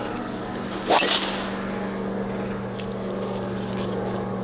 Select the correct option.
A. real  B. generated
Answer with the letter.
A